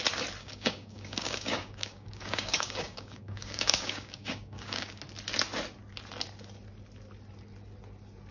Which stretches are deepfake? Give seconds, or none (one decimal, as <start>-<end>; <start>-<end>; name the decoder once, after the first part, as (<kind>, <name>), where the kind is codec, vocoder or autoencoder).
0.4-5.0 (codec, DAC)